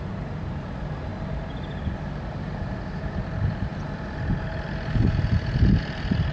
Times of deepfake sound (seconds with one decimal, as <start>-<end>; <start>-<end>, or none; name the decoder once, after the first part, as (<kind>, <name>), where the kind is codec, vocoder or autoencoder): 0.0-1.1 (vocoder, BigVGAN v2); 2.9-6.3